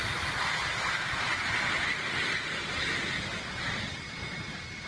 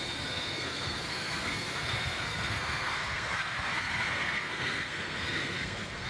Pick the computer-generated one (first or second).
second